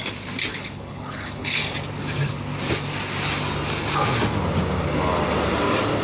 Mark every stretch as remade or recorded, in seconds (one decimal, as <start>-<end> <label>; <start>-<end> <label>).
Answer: 0.0-0.5 recorded; 0.5-1.6 remade; 1.6-6.0 recorded